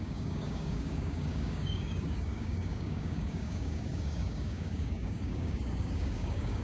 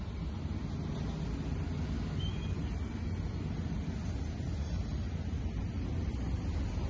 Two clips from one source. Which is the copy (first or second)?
first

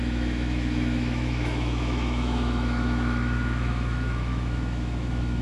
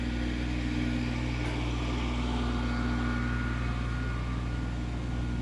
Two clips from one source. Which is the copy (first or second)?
first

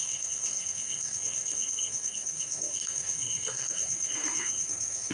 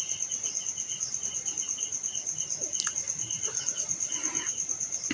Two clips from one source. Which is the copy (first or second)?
first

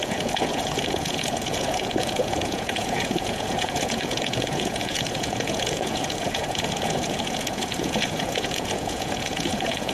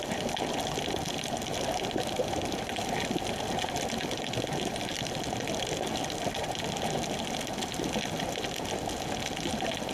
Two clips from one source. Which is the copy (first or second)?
first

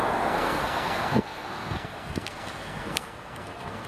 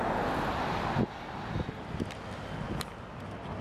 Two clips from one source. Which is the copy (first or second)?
first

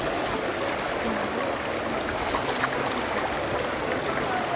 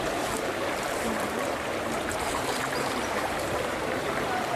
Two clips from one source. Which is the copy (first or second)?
second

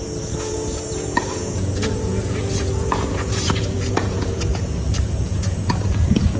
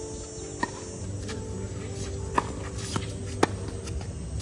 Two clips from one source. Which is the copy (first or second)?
first